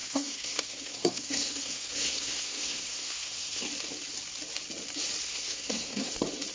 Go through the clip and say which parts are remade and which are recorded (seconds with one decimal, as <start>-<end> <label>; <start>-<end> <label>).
0.0-3.6 remade; 3.6-5.2 recorded; 5.2-6.1 remade; 6.1-6.5 recorded